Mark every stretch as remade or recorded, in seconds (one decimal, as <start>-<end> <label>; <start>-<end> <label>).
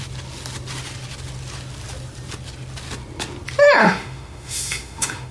0.0-3.8 recorded; 3.8-5.3 remade